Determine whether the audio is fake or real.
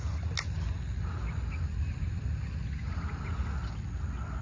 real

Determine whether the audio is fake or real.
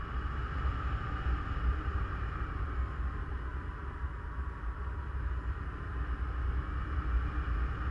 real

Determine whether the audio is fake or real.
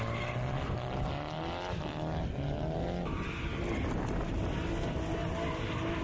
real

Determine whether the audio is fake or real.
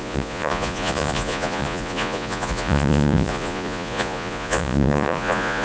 fake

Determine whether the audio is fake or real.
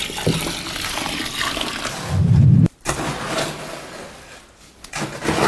real